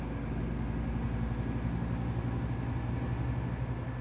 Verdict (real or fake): real